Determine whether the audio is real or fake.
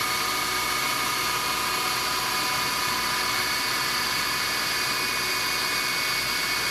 real